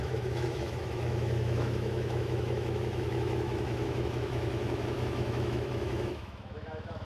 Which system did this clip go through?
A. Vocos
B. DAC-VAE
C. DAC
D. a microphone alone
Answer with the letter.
B